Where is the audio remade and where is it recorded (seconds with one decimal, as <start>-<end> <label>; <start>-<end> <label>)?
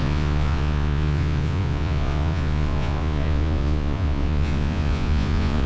0.0-5.7 remade